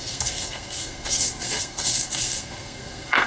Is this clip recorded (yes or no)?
no